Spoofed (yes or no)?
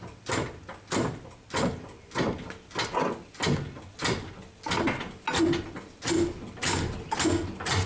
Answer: no